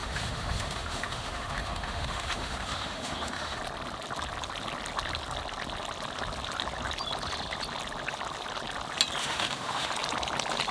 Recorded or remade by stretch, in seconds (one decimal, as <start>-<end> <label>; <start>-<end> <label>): 0.0-3.6 remade; 3.6-9.2 recorded; 9.2-9.9 remade; 9.9-10.7 recorded